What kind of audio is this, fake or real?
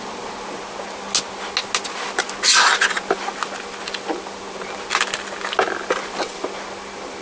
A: real